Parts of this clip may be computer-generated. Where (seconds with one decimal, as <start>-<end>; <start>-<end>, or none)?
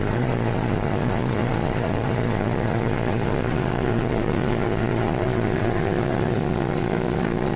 0.0-7.6